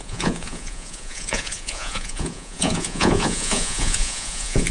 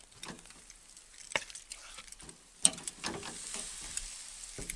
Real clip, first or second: second